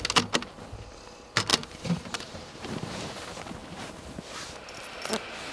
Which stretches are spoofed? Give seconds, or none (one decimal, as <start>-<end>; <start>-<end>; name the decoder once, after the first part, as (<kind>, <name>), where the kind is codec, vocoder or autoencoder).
1.5-2.8 (vocoder, BigVGAN v2); 3.6-4.1